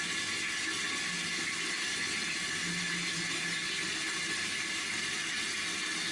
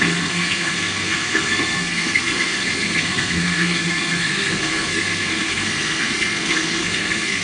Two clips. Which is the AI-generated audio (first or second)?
second